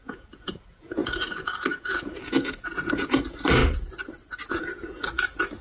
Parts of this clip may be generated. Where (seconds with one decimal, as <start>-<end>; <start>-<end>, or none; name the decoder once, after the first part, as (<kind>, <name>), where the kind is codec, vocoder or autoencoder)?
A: 0.0-3.6 (vocoder, Vocos); 4.5-5.6